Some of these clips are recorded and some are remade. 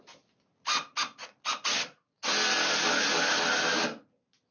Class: recorded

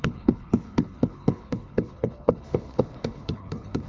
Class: remade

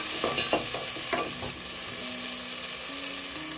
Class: recorded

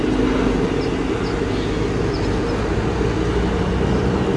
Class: recorded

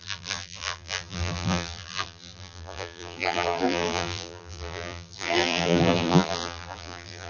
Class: remade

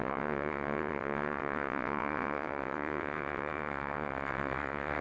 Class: remade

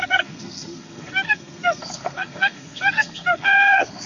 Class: remade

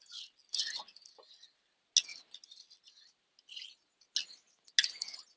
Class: recorded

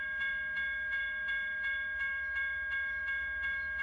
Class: remade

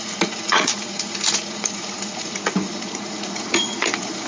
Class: remade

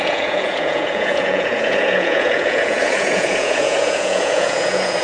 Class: remade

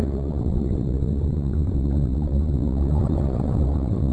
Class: remade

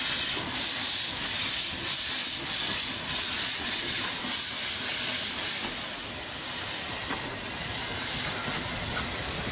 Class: recorded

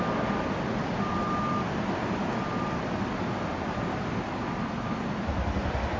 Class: recorded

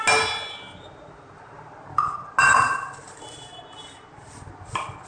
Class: recorded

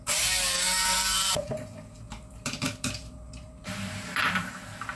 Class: remade